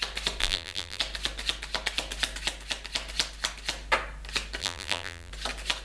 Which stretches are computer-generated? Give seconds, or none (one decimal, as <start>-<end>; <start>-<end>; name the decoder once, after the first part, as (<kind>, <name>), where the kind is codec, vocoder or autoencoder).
0.4-1.0 (vocoder, BigVGAN v2); 4.6-5.3

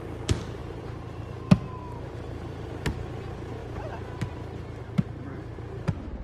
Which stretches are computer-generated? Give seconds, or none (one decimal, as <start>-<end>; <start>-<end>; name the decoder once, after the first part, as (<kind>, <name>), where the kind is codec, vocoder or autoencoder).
1.8-2.7 (vocoder, BigVGAN v2)

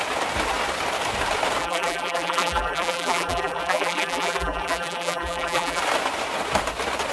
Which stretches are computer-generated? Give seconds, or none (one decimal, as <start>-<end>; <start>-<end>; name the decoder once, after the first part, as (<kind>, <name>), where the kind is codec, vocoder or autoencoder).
1.6-5.8 (vocoder, BigVGAN v2)

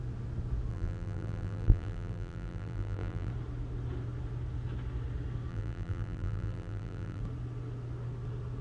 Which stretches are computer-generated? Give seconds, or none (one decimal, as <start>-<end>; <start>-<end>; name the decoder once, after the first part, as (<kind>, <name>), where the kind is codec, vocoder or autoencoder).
0.7-3.3 (vocoder, BigVGAN v2); 5.5-7.2

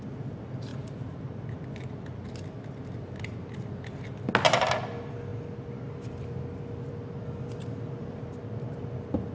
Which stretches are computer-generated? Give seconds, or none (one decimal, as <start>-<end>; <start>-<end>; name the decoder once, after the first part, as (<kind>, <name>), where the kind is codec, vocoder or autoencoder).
none

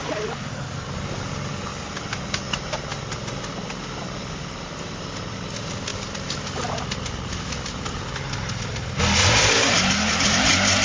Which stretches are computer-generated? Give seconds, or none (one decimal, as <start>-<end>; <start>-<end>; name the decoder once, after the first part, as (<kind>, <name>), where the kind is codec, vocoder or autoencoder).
1.7-2.5 (vocoder, BigVGAN v2); 5.9-6.8; 9.2-10.1